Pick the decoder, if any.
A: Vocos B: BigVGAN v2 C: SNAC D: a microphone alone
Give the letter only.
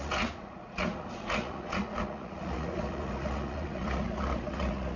A